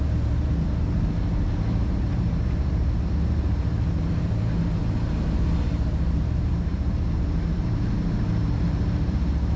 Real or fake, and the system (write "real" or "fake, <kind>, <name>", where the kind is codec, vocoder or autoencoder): fake, vocoder, BigVGAN v2